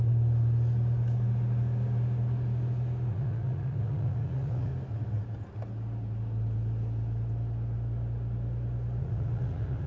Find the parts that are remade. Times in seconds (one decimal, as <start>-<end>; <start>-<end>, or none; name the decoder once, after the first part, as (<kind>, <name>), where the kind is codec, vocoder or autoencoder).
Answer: 3.1-4.7 (vocoder, Vocos); 9.0-9.9